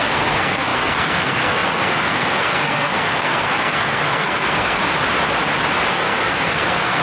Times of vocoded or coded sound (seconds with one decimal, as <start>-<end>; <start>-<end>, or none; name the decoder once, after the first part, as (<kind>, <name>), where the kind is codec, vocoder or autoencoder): 0.0-4.8 (codec, SNAC); 5.9-7.0